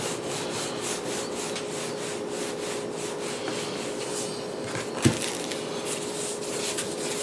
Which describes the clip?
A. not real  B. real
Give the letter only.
B